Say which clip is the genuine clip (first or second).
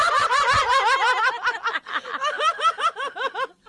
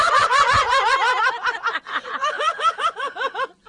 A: first